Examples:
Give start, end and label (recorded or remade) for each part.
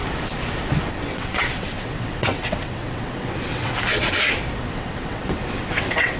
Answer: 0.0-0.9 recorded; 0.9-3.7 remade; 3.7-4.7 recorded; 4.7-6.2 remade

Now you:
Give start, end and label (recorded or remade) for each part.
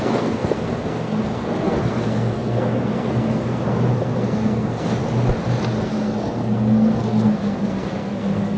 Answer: 0.0-5.0 remade; 5.0-5.8 recorded; 5.8-8.6 remade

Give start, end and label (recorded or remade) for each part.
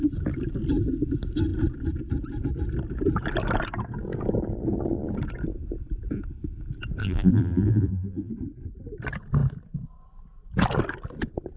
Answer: 0.0-7.0 recorded; 7.0-8.3 remade; 8.3-11.6 recorded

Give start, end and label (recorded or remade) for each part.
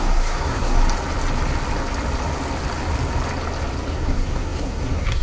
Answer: 0.0-0.8 remade; 0.8-3.9 recorded; 3.9-5.2 remade